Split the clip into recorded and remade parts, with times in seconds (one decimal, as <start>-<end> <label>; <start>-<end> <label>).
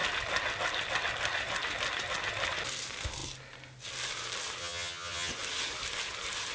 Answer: 0.0-4.6 recorded; 4.6-5.3 remade; 5.3-6.5 recorded